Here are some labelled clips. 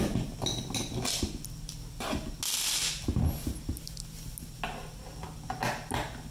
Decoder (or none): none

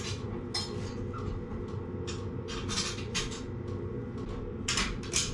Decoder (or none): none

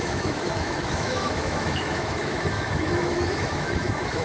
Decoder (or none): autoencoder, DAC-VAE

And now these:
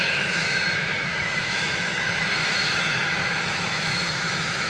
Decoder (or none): autoencoder, DAC-VAE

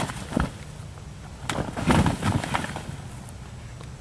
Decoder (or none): none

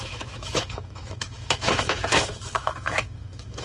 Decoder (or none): autoencoder, DAC-VAE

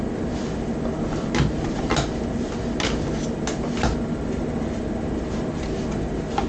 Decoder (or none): none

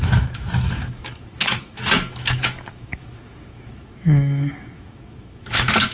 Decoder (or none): autoencoder, DAC-VAE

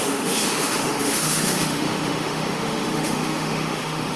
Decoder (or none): autoencoder, DAC-VAE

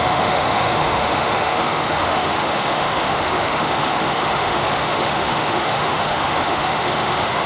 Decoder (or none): autoencoder, DAC-VAE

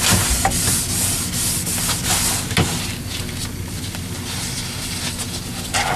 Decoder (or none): none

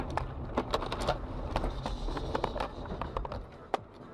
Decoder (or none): none